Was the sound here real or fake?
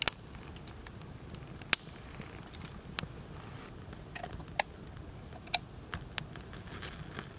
real